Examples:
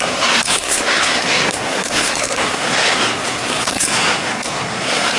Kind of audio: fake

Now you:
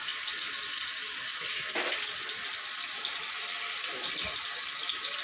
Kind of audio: real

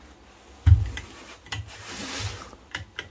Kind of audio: real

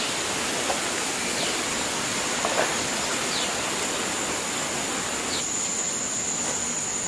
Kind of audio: real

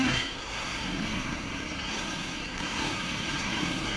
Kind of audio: fake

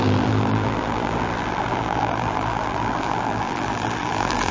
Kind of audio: fake